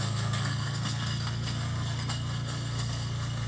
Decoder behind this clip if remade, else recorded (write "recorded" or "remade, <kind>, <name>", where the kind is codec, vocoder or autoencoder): remade, codec, SNAC